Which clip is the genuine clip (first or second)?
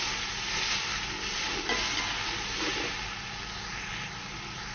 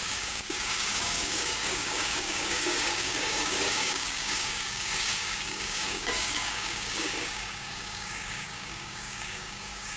first